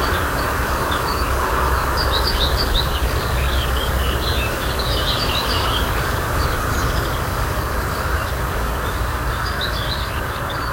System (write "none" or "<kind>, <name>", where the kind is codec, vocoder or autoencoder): codec, DAC